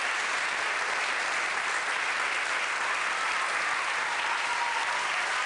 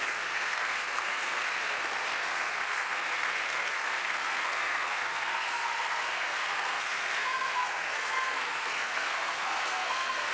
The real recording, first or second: first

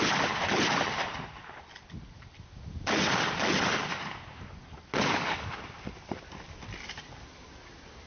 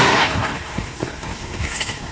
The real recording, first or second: first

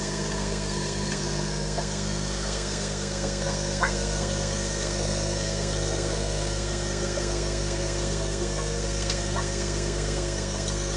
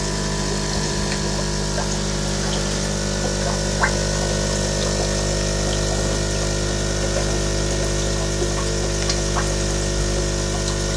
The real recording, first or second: second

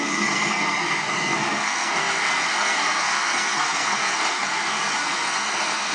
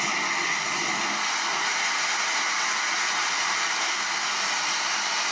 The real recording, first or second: second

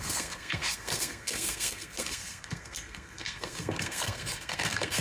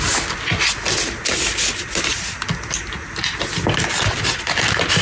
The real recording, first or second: second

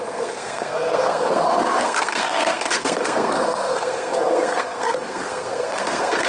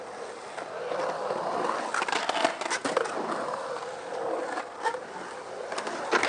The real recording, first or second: second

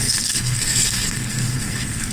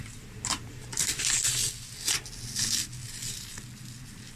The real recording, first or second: second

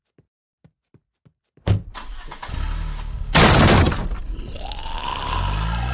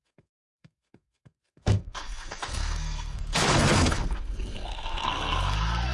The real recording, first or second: first